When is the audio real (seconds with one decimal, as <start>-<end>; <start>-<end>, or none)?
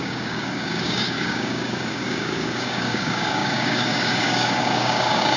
none